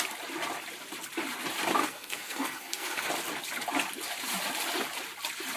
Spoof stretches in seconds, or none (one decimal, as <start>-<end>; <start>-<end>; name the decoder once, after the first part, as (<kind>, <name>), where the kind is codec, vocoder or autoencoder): 1.8-3.1 (codec, SNAC)